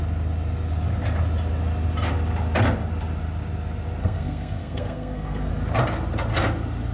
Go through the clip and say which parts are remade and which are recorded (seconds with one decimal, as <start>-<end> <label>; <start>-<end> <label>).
0.0-4.0 recorded; 4.0-5.5 remade; 5.5-6.9 recorded